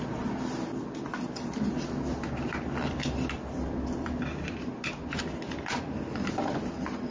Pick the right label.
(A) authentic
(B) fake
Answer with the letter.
A